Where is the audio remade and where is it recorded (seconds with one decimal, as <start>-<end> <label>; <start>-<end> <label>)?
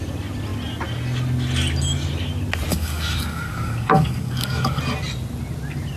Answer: 0.0-2.7 recorded; 2.7-4.8 remade; 4.8-6.0 recorded